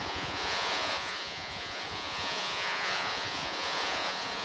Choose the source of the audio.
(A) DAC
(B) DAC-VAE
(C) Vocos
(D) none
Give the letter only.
C